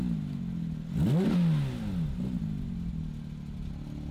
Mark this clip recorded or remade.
recorded